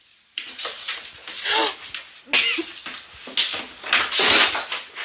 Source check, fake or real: real